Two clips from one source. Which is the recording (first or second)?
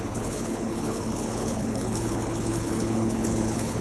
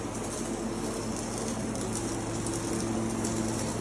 second